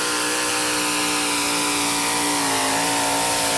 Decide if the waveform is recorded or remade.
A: recorded